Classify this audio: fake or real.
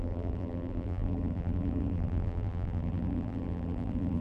fake